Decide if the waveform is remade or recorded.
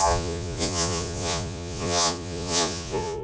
remade